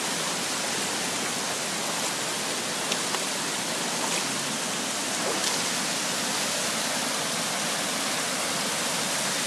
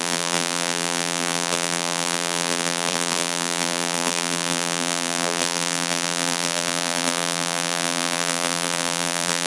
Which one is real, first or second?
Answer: first